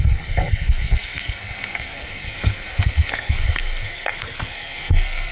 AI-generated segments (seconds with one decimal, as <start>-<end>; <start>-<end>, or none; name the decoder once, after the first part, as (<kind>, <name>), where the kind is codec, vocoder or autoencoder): 0.0-5.3 (codec, SNAC)